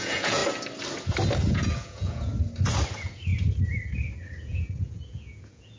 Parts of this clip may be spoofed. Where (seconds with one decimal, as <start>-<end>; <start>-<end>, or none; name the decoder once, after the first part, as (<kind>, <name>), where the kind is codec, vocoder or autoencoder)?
0.0-0.4 (vocoder, Vocos); 1.5-2.3; 2.9-3.3; 4.4-5.8